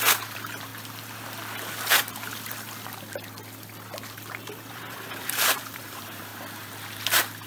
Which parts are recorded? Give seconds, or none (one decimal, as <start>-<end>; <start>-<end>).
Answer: 0.7-4.7; 6.3-7.5